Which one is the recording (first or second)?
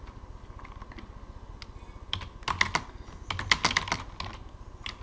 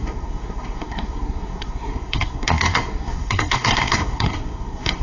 first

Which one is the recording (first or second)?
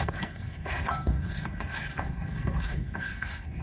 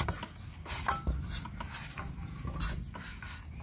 second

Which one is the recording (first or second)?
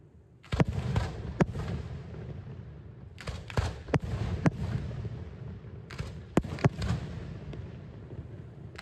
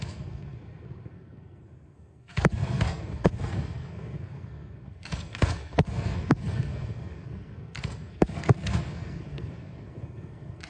first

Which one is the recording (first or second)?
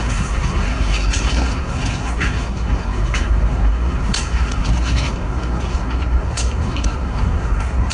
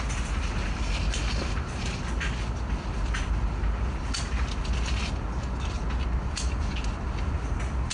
second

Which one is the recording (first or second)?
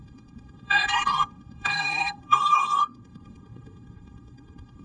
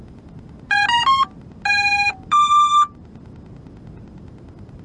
second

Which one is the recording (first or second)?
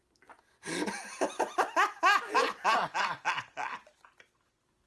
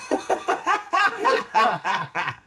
first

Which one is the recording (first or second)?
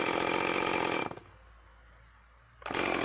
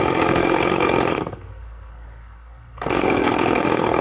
first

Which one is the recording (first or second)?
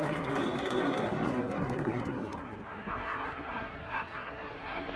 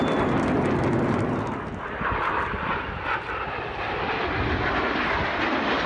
second